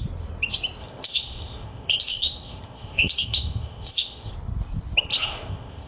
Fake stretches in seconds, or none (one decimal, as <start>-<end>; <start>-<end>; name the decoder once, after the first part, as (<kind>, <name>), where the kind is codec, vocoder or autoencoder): 0.8-4.3 (codec, ZipCodec); 5.1-5.9